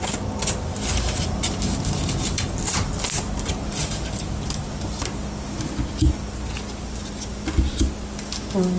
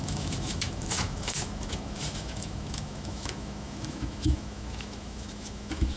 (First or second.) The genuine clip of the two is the first